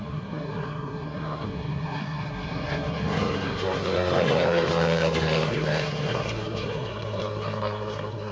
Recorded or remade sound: remade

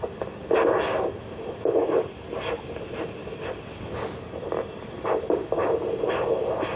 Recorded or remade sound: recorded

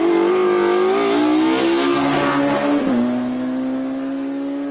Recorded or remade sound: recorded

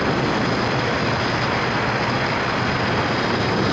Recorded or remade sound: recorded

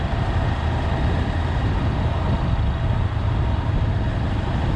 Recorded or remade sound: recorded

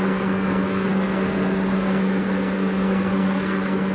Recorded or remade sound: remade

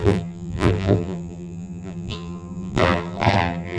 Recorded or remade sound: remade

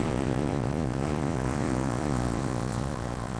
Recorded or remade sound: remade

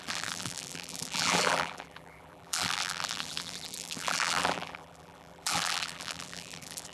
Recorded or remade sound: remade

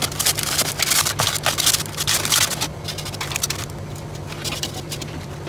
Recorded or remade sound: recorded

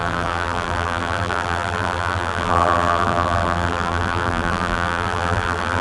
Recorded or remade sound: remade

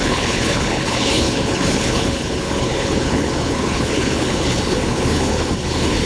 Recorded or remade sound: remade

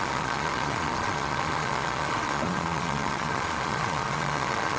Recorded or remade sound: remade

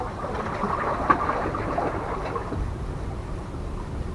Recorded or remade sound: recorded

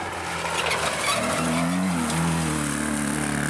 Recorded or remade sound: recorded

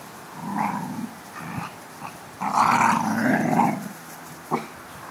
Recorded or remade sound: remade